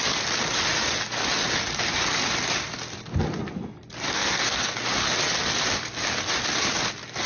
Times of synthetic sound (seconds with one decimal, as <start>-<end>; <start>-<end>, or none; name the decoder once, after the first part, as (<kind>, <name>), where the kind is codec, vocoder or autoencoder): 4.1-4.7 (codec, SNAC)